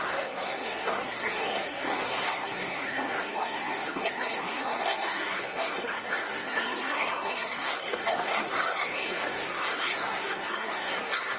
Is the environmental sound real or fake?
fake